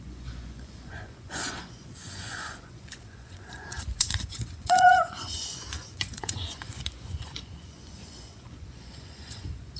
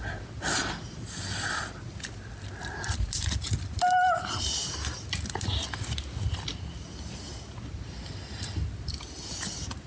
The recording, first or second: second